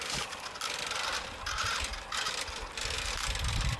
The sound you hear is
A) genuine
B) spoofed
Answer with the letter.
A